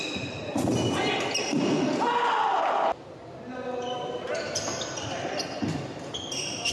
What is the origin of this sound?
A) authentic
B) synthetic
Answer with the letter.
A